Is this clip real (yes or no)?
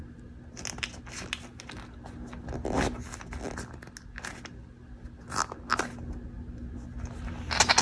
yes